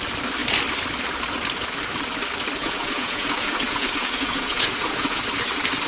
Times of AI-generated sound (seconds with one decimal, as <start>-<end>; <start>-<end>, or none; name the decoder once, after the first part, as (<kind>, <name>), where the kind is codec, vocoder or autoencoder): 2.6-5.2 (vocoder, Vocos)